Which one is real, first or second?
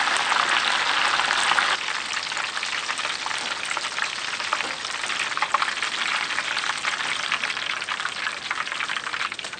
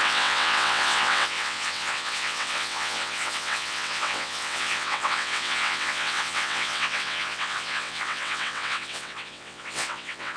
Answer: first